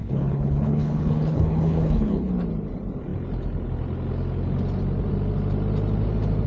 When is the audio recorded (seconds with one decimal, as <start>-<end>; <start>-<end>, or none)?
2.3-6.5